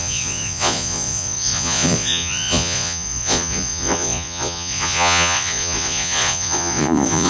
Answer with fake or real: fake